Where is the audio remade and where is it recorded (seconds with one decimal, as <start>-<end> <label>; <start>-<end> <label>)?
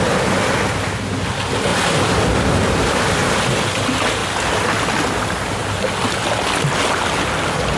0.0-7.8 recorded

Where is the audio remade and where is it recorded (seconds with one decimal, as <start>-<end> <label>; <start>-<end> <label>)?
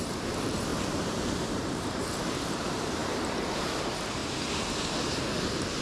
0.0-0.7 remade; 0.7-1.8 recorded; 1.8-4.2 remade; 4.2-5.8 recorded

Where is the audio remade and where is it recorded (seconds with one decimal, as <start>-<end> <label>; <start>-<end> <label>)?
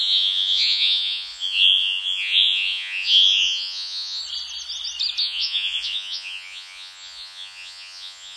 0.0-4.2 remade; 4.2-5.2 recorded; 5.2-8.4 remade